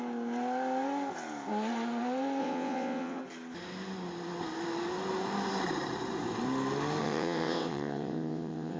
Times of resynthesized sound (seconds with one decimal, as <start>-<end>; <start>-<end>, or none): 2.4-3.2; 7.0-8.8